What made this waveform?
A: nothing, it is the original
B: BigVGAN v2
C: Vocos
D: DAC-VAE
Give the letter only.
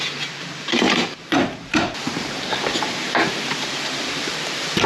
B